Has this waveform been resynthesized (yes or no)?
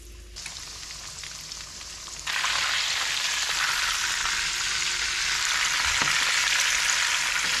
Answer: no